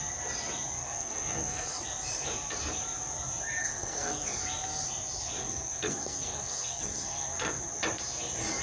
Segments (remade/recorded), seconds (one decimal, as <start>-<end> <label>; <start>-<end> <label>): 0.0-0.8 recorded; 0.8-1.8 remade; 1.8-3.6 recorded; 3.6-4.4 remade; 4.4-5.4 recorded; 5.4-7.7 remade; 7.7-8.6 recorded